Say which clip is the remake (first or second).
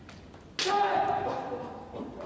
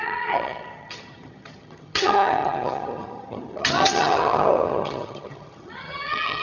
second